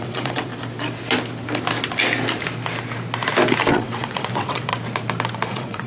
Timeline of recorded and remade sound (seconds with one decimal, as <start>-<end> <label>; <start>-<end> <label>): 0.0-0.5 remade; 0.5-3.7 recorded; 3.7-4.7 remade; 4.7-5.5 recorded; 5.5-5.9 remade